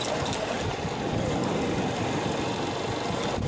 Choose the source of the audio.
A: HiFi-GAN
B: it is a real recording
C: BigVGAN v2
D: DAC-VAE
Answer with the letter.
B